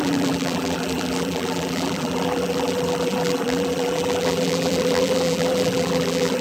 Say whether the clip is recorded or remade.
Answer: remade